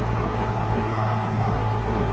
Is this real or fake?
fake